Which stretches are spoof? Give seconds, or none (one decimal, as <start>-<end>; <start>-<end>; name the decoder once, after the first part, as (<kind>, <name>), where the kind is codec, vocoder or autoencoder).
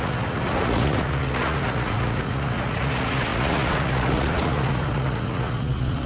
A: 0.0-6.1 (vocoder, Vocos)